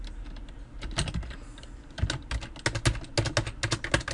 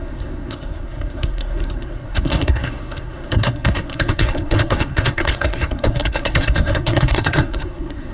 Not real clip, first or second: second